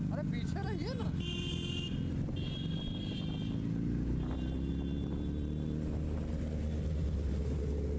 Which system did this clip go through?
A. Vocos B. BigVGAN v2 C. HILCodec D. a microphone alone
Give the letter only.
D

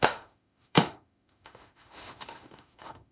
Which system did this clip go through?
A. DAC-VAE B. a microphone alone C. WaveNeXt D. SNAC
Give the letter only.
A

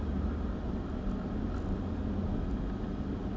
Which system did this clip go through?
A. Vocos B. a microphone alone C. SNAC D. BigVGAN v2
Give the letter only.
B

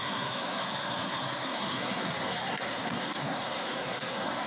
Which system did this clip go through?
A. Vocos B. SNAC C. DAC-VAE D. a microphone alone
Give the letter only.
B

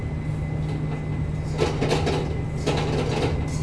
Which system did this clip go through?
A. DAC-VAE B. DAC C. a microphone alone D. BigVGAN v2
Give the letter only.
C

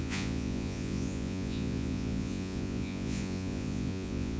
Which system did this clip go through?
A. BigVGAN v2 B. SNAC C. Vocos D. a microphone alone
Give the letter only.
C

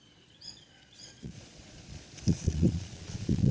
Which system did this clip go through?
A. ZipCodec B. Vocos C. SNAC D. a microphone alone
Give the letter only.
B